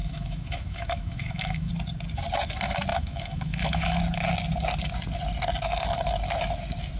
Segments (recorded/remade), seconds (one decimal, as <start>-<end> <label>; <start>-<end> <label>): 0.0-1.7 remade; 1.7-2.9 recorded; 2.9-4.0 remade; 4.0-7.0 recorded